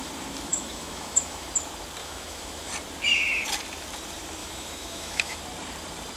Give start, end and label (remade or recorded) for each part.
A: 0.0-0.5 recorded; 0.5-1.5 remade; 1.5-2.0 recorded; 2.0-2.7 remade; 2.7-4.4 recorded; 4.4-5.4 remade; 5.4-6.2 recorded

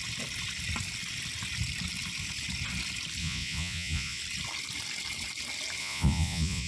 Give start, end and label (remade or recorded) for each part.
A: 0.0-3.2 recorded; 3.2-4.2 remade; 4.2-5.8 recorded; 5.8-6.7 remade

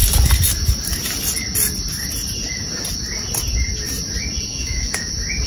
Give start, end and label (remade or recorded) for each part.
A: 0.0-4.5 recorded; 4.5-5.1 remade; 5.1-5.5 recorded